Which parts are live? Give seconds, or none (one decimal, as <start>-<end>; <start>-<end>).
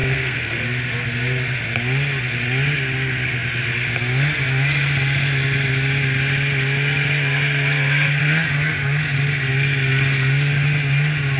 0.6-11.4